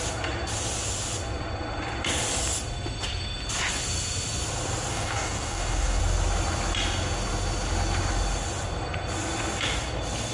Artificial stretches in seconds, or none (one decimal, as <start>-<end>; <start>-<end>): 4.9-6.0